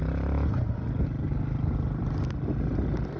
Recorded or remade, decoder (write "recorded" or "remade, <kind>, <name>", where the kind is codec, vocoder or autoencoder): recorded